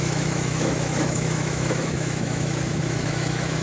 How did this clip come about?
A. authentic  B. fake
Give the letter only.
B